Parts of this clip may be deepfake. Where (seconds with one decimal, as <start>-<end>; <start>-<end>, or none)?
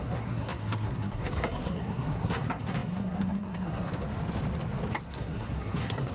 0.0-3.9; 5.1-6.1